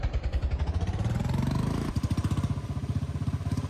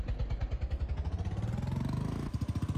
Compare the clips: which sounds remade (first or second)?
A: first